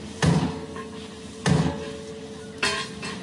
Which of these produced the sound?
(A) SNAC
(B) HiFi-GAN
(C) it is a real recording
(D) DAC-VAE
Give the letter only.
C